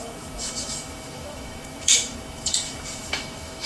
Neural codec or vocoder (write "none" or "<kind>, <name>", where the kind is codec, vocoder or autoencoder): autoencoder, DAC-VAE